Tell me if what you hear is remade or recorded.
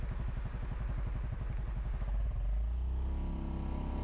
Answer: recorded